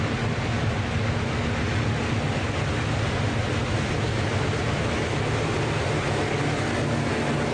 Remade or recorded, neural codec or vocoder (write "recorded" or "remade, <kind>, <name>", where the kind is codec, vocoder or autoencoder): recorded